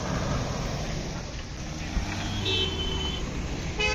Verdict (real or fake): real